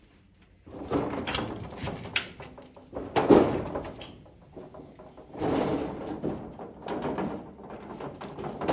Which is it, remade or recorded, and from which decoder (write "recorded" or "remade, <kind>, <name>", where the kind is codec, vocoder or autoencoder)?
recorded